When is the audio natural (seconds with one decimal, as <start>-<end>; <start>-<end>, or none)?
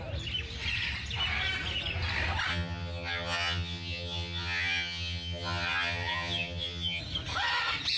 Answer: 0.0-2.5; 7.0-8.0